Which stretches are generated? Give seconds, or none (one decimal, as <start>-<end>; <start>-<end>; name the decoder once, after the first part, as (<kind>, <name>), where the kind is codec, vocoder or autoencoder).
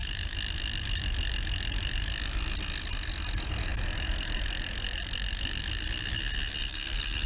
6.6-7.3 (codec, DAC)